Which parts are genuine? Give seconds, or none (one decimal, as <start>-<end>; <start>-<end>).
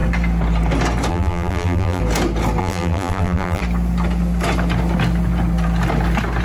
0.0-1.1; 2.0-2.6; 3.6-6.4